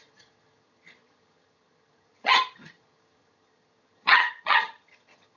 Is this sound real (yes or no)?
no